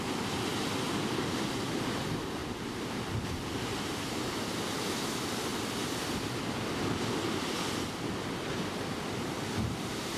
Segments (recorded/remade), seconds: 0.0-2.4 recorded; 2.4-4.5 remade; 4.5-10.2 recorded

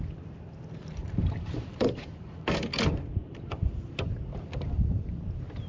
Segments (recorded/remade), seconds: 0.0-1.0 recorded; 1.0-2.5 remade; 2.5-3.2 recorded; 3.2-3.7 remade; 3.7-5.7 recorded

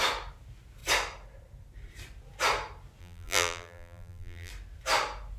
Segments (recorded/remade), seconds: 0.0-3.0 recorded; 3.0-4.5 remade; 4.5-5.4 recorded

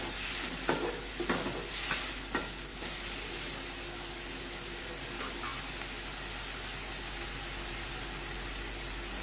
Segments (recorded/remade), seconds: 0.0-9.2 recorded

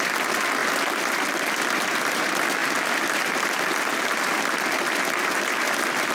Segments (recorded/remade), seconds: 0.0-0.6 recorded; 0.6-1.4 remade; 1.4-6.1 recorded

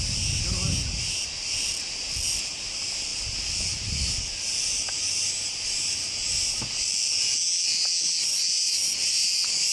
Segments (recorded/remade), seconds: 0.0-9.7 recorded